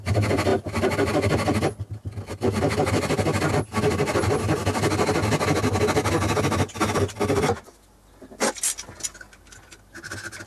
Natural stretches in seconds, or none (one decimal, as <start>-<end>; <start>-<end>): 0.0-10.5